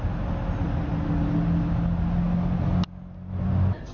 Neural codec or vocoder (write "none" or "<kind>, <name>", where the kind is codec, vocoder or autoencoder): none